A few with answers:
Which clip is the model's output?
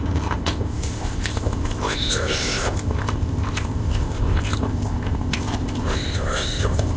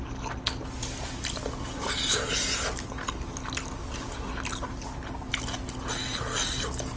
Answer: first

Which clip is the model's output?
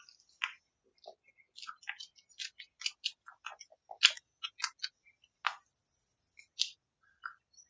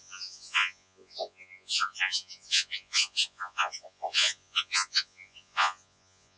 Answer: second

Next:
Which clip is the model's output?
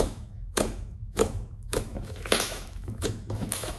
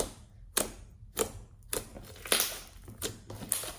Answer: first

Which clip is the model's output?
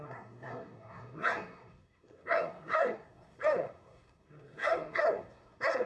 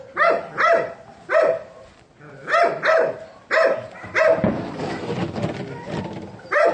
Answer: first